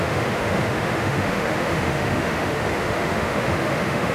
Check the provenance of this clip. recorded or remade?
remade